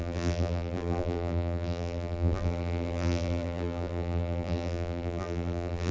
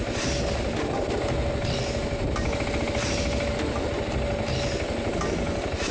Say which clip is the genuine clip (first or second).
second